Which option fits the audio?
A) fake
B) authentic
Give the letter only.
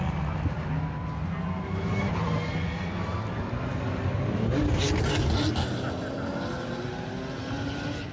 B